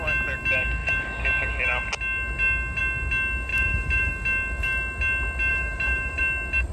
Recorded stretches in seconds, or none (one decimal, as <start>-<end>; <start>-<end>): 0.0-3.5; 4.1-5.5; 6.2-6.7

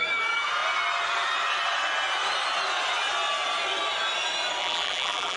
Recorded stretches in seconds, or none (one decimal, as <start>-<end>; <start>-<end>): 0.0-4.6

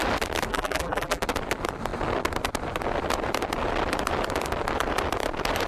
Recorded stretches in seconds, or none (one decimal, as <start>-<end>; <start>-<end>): 0.0-0.5; 1.2-5.7

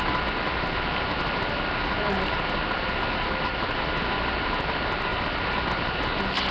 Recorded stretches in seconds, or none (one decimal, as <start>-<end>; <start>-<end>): 0.0-6.5

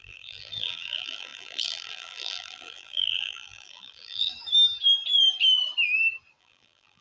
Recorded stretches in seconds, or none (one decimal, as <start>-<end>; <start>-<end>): 4.3-6.4

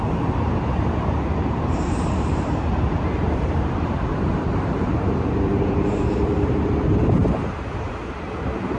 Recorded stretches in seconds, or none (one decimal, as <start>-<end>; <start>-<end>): none

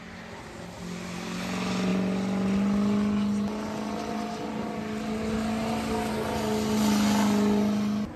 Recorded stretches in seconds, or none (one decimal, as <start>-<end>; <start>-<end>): 0.0-8.2

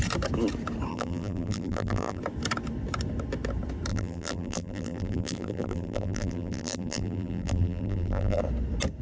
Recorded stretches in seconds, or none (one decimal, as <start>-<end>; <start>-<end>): 0.0-0.9; 2.2-3.9; 8.4-9.0